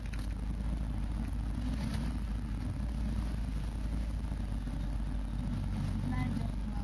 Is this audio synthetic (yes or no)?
no